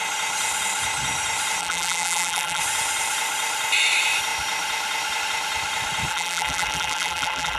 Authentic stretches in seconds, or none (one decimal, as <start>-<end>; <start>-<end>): 0.0-1.6; 2.6-6.1